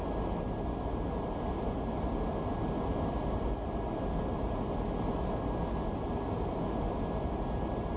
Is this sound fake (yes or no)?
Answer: no